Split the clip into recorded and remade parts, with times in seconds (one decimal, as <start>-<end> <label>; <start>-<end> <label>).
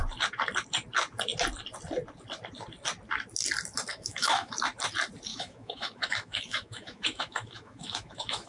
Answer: 0.0-3.9 recorded; 3.9-4.5 remade; 4.5-5.3 recorded; 5.3-8.5 remade